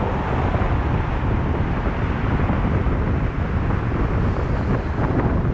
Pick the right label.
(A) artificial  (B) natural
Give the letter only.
B